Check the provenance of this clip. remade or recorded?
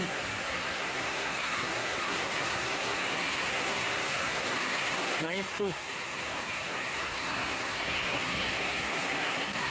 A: remade